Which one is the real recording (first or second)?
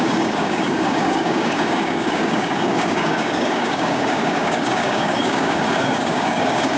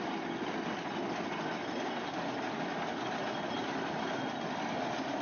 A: second